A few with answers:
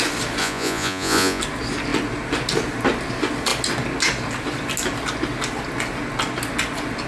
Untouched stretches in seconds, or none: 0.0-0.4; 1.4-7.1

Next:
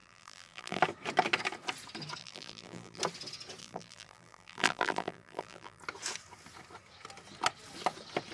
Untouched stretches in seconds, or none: 0.8-2.2; 3.0-3.6; 5.8-8.3

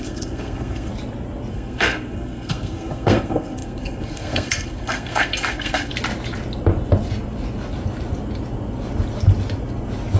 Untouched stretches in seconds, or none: 0.9-1.5; 5.9-10.2

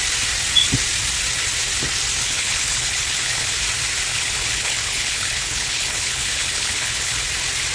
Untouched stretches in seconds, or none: 0.0-2.2; 3.6-4.1; 7.2-7.7

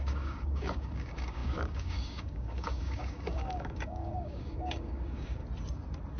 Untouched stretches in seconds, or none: 5.4-6.2